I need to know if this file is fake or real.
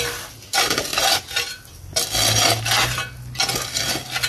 real